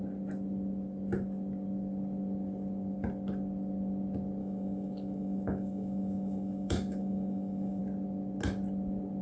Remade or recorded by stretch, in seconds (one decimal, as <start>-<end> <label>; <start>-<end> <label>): 0.0-4.4 recorded; 4.4-7.8 remade; 7.8-9.2 recorded